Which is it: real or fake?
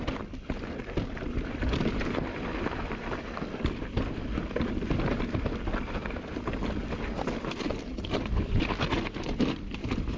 fake